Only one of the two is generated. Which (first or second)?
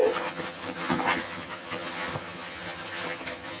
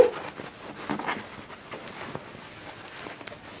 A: first